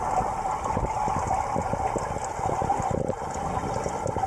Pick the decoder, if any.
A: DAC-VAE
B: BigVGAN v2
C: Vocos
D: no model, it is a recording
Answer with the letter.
D